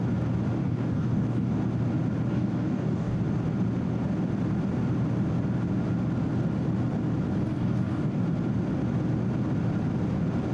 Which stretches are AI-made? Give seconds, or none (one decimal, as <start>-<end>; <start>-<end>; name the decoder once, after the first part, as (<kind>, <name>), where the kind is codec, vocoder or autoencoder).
0.6-1.6 (codec, DAC); 2.3-3.2; 7.5-8.2